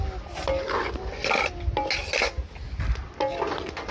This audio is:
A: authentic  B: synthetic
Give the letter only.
A